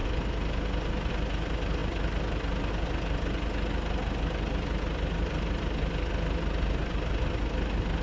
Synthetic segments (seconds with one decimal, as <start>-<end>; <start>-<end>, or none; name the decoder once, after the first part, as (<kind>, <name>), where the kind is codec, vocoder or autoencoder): none